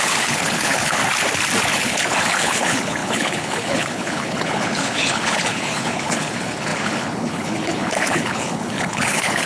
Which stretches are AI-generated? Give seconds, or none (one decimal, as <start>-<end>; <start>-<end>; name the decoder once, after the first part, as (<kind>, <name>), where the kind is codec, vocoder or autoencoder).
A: 0.0-1.0 (codec, HILCodec); 1.6-9.5

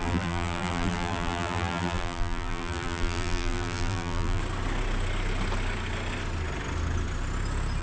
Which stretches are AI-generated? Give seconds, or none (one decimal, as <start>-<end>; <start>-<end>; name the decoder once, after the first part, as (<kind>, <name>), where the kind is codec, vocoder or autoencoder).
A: 0.0-4.4 (vocoder, BigVGAN v2)

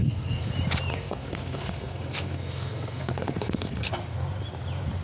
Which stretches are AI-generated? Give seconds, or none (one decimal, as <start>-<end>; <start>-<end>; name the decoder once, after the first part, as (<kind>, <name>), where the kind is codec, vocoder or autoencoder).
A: 0.0-0.5 (codec, SNAC); 0.9-3.9

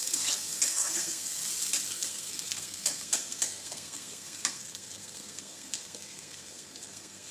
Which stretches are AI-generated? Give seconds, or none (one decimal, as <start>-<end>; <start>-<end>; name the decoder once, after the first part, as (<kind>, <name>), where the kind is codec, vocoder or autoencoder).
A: 0.0-1.4 (codec, SNAC); 1.9-7.3

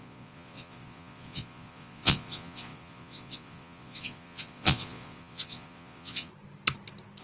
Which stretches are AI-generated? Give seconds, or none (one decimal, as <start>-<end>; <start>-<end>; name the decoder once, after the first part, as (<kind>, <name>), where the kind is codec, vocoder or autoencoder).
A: 0.0-6.3 (vocoder, Vocos)